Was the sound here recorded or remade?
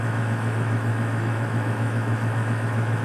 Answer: remade